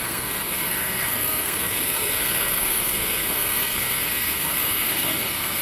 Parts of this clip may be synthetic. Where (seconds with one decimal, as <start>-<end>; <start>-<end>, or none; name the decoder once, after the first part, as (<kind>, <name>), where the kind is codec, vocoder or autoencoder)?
0.0-5.6 (codec, SNAC)

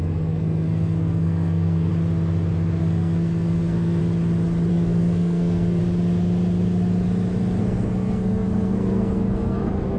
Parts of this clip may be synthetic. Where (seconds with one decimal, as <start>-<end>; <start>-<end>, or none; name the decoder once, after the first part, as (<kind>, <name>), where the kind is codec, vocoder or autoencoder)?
0.0-1.9 (codec, SNAC); 2.8-4.0; 4.7-5.8; 7.6-10.0

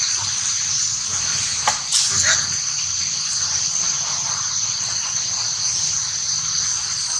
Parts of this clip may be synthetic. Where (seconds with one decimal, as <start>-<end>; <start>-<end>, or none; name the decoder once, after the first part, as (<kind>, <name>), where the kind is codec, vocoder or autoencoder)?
none

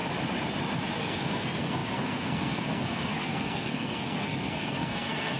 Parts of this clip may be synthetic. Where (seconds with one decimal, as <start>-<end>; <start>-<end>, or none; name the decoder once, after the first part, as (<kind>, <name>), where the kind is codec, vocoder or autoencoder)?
1.0-5.4 (codec, SNAC)